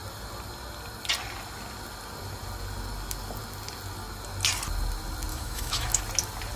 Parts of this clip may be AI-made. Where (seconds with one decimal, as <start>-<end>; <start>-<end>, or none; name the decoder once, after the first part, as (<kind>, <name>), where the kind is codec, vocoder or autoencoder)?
5.3-6.0 (autoencoder, DAC-VAE)